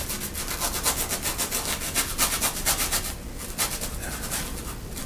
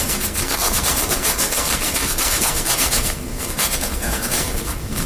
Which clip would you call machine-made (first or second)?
second